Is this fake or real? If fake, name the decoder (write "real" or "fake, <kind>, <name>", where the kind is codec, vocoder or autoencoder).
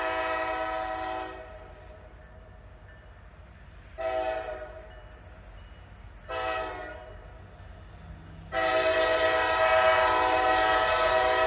real